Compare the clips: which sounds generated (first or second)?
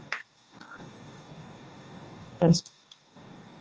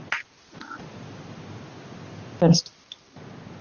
first